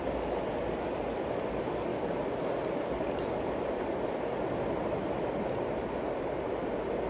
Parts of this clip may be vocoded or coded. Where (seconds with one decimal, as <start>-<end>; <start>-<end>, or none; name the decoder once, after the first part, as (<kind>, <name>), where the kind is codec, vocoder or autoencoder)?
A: none